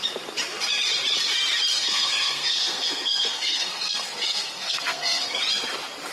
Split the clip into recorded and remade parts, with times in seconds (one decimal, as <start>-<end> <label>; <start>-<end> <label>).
0.0-1.7 recorded; 1.7-5.4 remade; 5.4-6.1 recorded